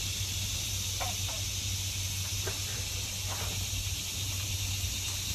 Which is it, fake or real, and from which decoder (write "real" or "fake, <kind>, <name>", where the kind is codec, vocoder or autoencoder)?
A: real